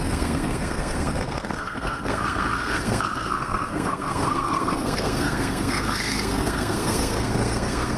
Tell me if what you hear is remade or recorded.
remade